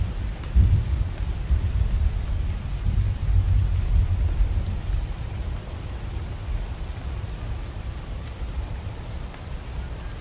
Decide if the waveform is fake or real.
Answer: real